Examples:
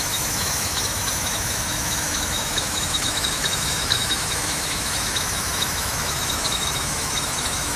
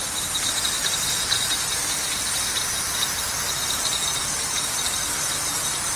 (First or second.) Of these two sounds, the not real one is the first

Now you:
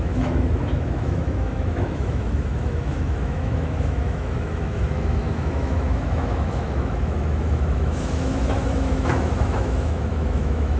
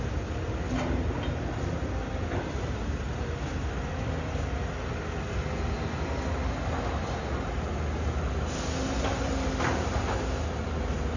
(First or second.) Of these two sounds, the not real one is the first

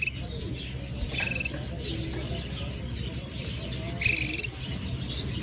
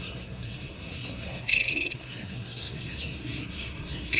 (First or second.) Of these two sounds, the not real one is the second